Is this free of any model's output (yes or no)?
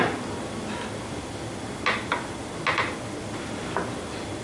yes